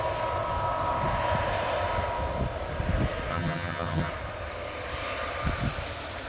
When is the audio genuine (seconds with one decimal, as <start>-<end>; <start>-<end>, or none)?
0.0-3.3; 4.1-6.3